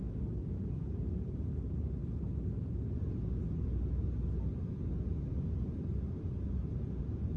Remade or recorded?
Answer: recorded